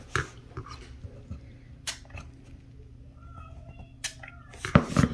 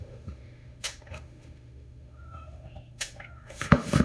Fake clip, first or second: second